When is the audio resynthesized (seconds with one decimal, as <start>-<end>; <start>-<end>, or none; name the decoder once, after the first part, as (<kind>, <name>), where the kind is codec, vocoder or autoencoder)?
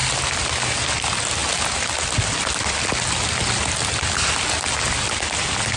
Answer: none